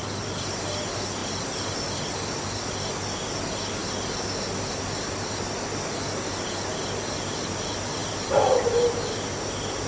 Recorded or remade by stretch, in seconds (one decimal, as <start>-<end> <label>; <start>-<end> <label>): 0.0-9.9 recorded